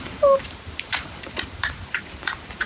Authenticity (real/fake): fake